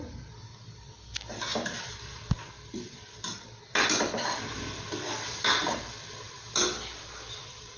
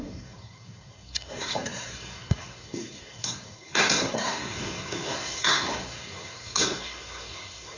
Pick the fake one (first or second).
second